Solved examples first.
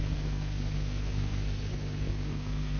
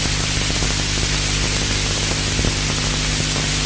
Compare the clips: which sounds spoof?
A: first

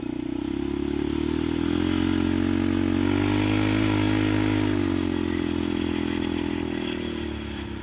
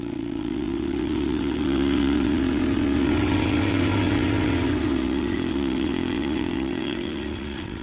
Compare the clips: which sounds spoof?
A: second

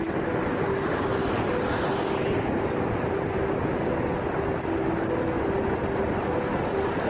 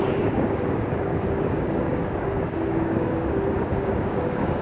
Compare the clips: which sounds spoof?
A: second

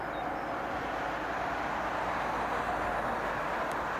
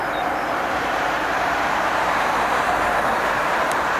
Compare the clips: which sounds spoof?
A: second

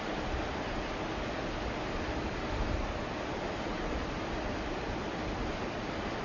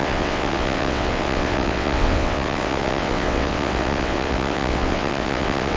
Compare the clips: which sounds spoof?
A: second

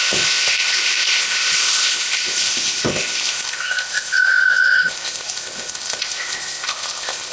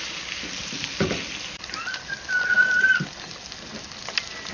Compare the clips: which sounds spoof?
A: first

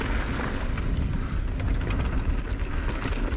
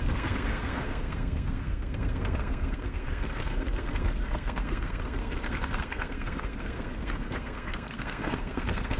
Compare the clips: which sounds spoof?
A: second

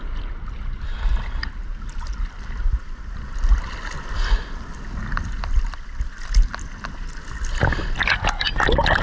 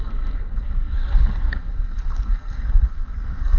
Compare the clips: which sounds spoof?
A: second